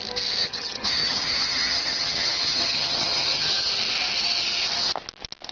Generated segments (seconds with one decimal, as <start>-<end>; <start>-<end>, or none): 0.4-3.7